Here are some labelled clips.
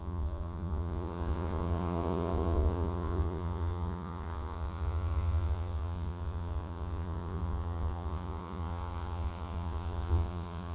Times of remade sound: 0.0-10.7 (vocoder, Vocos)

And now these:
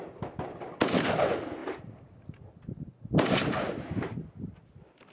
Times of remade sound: 1.6-2.3 (vocoder, BigVGAN v2)

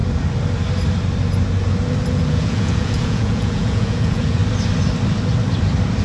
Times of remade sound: 2.1-4.4 (vocoder, Vocos)

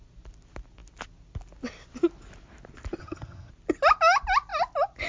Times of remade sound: 3.0-3.5 (vocoder, HiFi-GAN)